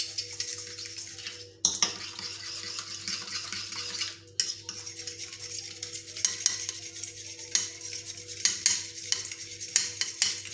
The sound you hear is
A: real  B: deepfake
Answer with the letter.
A